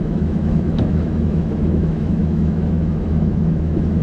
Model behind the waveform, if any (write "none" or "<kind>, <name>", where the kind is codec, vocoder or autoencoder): autoencoder, DAC-VAE